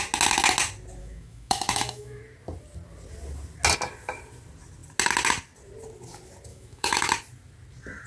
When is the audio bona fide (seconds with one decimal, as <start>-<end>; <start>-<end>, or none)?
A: 0.0-1.0; 2.2-6.5; 7.1-8.1

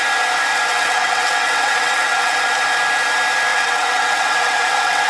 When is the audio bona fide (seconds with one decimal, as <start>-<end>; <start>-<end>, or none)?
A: 0.0-0.7; 2.4-3.5

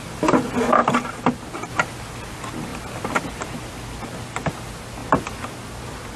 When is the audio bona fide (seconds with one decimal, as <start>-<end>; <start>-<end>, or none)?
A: 0.0-6.2

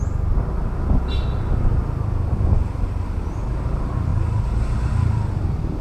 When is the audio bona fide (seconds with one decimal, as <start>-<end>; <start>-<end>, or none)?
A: 0.0-5.8

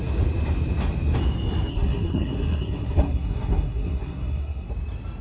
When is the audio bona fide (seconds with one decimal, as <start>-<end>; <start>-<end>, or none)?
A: 0.0-1.7; 4.7-5.2

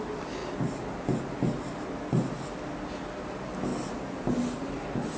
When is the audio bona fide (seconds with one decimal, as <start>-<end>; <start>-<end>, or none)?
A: 0.0-5.2

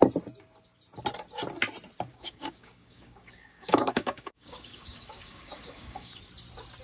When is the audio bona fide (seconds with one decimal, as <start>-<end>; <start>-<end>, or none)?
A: 0.0-2.1; 6.2-6.8

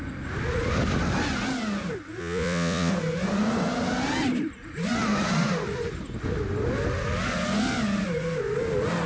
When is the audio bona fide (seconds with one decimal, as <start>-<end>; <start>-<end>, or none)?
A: 0.0-2.2; 2.9-9.1